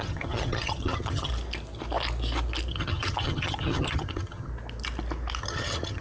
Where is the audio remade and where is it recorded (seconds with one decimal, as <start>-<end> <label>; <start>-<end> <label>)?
0.0-1.3 remade; 1.3-2.7 recorded; 2.7-4.5 remade; 4.5-5.4 recorded; 5.4-6.0 remade